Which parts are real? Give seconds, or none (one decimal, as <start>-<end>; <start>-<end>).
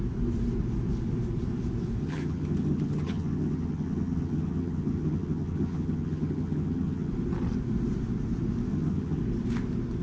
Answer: 0.0-2.0; 7.1-8.7; 9.2-10.0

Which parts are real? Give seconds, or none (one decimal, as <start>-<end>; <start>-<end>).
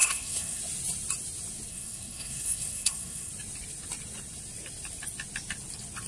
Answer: 0.6-1.7; 3.3-6.1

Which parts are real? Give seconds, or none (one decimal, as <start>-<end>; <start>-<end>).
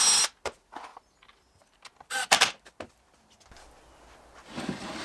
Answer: 0.0-5.0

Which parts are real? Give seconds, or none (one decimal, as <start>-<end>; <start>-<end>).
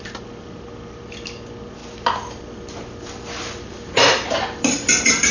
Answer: 0.0-5.3